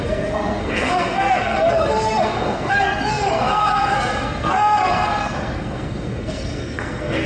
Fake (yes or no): yes